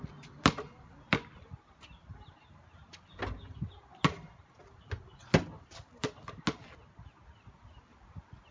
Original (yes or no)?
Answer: yes